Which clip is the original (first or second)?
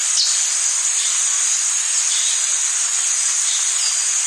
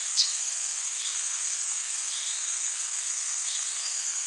first